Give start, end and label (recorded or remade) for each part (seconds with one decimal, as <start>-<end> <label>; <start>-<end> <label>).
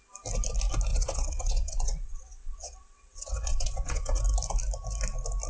0.0-0.9 recorded; 0.9-4.2 remade; 4.2-5.5 recorded